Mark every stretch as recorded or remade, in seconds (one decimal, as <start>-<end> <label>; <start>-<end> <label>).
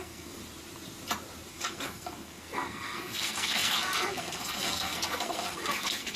0.0-0.4 remade; 0.4-1.5 recorded; 1.5-6.2 remade